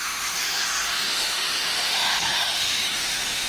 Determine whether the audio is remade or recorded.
remade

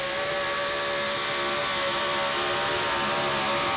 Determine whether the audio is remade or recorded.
recorded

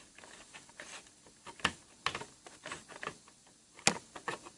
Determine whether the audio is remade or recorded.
recorded